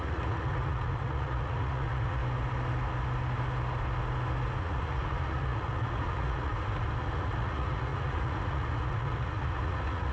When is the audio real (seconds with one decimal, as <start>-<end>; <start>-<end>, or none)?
2.2-4.6; 6.5-7.0